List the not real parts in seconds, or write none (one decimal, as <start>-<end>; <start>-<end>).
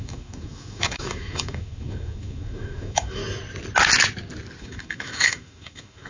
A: 0.0-3.2; 4.6-6.1